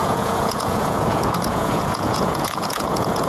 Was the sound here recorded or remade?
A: remade